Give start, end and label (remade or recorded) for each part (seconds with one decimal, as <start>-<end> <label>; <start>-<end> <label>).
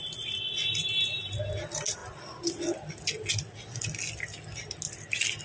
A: 0.0-5.4 recorded